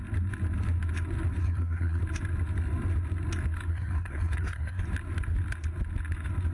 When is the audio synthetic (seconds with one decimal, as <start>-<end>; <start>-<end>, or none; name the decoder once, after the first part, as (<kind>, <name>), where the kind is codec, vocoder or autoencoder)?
1.4-2.0 (codec, SNAC); 3.7-4.8